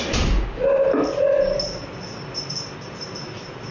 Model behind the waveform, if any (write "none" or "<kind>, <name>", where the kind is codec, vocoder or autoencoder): none